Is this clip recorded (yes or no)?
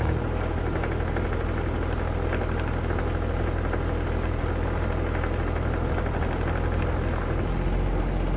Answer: yes